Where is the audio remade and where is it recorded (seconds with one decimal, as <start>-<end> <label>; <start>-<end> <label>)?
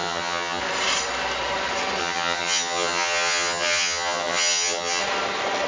0.0-0.6 remade; 0.6-2.0 recorded; 2.0-5.0 remade; 5.0-5.7 recorded